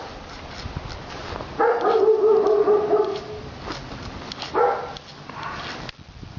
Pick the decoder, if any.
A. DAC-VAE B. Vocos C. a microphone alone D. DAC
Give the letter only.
C